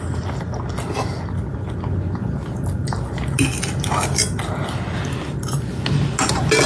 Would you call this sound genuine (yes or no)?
yes